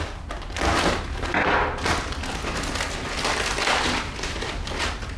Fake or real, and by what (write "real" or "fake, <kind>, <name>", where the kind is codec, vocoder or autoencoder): real